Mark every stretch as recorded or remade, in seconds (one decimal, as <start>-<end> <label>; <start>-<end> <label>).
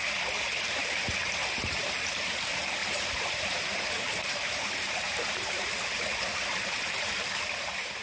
0.0-0.8 recorded; 0.8-1.8 remade; 1.8-2.8 recorded; 2.8-5.7 remade; 5.7-6.3 recorded; 6.3-7.2 remade; 7.2-8.0 recorded